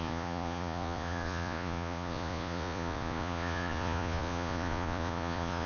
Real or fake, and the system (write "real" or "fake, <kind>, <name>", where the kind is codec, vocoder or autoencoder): fake, vocoder, Vocos